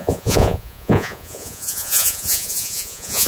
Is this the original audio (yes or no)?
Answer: no